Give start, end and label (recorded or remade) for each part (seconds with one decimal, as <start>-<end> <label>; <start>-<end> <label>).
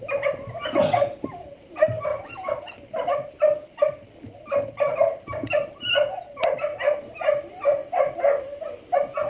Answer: 0.0-2.1 recorded; 2.1-4.6 remade; 4.6-9.3 recorded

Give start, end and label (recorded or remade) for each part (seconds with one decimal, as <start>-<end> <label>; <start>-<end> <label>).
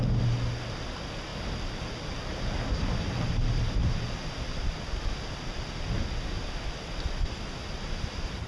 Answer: 0.0-8.5 recorded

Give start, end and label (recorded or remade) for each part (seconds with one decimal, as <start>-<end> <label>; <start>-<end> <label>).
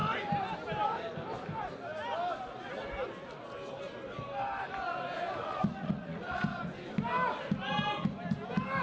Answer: 0.0-5.4 recorded; 5.4-6.4 remade; 6.4-8.8 recorded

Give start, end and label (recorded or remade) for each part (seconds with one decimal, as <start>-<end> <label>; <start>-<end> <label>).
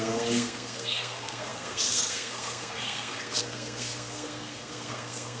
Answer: 0.0-5.4 remade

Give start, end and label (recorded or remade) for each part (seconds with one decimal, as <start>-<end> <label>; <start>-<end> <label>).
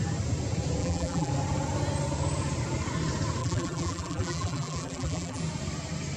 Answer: 0.0-0.8 recorded; 0.8-1.3 remade; 1.3-3.4 recorded; 3.4-5.4 remade; 5.4-6.2 recorded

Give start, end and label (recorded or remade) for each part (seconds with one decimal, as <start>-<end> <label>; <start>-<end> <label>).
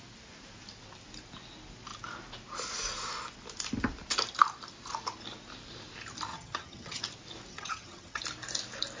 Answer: 0.0-6.3 recorded; 6.3-7.0 remade; 7.0-7.5 recorded; 7.5-8.2 remade; 8.2-9.0 recorded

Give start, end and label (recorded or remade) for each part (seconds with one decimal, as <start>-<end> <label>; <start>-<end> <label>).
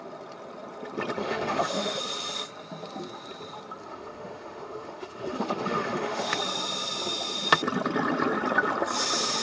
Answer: 0.0-1.2 recorded; 1.2-2.0 remade; 2.0-3.8 recorded; 3.8-6.4 remade; 6.4-9.4 recorded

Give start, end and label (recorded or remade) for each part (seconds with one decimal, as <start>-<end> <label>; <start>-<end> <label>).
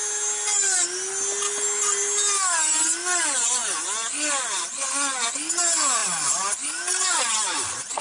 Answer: 0.0-8.0 recorded